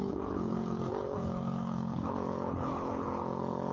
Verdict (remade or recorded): remade